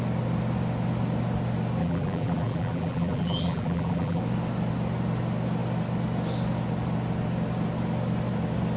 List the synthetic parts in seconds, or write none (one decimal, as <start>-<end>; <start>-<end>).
1.8-4.2